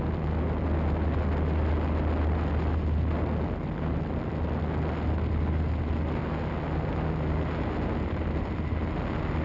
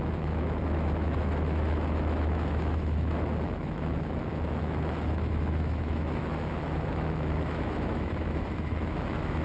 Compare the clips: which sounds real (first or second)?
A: first